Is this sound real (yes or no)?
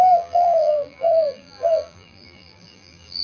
no